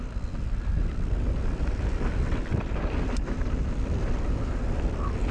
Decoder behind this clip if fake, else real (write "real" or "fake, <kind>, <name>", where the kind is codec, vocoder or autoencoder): real